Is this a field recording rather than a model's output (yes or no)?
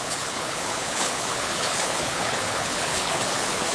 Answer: no